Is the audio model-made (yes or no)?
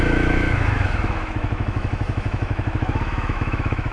yes